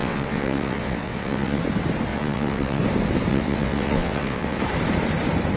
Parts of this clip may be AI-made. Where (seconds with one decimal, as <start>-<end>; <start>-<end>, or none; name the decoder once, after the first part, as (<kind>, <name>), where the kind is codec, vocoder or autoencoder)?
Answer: 0.0-1.6 (vocoder, WaveNeXt); 2.1-2.8; 3.3-4.6